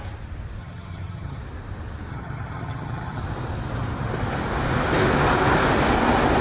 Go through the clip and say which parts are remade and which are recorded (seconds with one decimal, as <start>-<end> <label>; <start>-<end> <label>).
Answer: 0.0-0.6 recorded; 0.6-1.4 remade; 1.4-2.1 recorded; 2.1-3.2 remade; 3.2-6.4 recorded